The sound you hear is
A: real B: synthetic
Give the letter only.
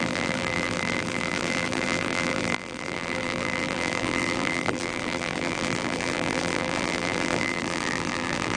B